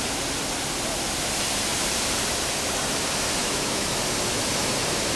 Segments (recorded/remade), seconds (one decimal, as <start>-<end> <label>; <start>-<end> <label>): 0.0-3.4 recorded; 3.4-3.9 remade; 3.9-5.2 recorded